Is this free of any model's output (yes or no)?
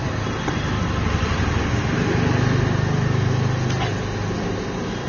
yes